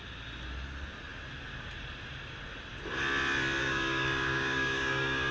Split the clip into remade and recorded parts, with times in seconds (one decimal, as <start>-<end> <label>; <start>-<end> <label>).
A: 0.0-3.6 recorded; 3.6-5.3 remade